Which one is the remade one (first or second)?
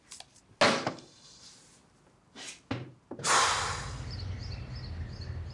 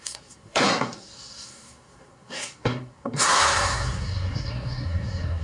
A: second